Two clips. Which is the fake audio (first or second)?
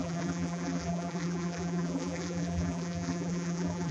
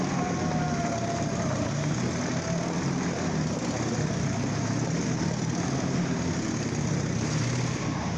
first